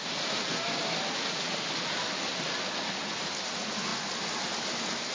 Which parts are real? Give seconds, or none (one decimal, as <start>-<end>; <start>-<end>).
0.0-5.1

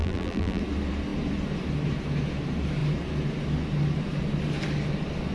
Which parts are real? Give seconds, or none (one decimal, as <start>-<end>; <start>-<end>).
0.6-5.3

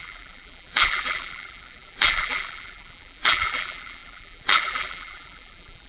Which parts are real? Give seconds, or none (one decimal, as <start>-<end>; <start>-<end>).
none

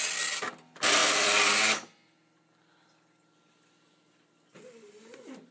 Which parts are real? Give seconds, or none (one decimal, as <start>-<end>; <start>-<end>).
0.0-5.5

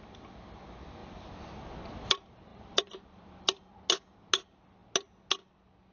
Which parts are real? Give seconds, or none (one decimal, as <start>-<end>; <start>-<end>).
0.0-1.0; 1.6-2.5; 3.7-5.9

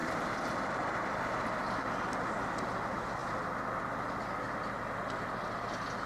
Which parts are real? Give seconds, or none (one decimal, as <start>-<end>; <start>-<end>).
1.4-6.1

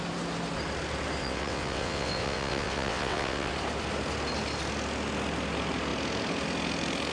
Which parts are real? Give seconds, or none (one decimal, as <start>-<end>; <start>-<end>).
0.0-1.2; 3.5-7.1

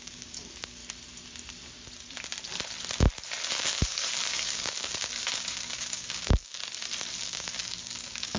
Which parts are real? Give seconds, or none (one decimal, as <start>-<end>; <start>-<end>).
0.8-3.5; 6.6-7.2